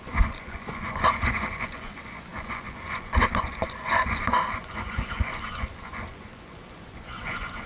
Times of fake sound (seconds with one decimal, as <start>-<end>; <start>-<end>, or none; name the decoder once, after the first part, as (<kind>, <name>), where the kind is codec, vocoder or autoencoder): 0.0-7.7 (vocoder, Vocos)